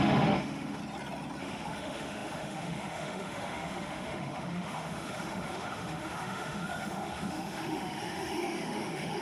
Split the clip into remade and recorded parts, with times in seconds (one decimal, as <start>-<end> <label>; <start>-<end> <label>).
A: 0.0-0.8 remade; 0.8-1.4 recorded; 1.4-9.2 remade